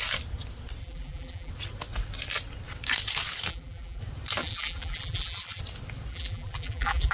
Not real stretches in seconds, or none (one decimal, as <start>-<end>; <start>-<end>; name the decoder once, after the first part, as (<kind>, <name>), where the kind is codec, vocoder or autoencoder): 0.8-1.5 (vocoder, BigVGAN v2); 3.5-4.0; 4.4-5.6; 6.1-7.1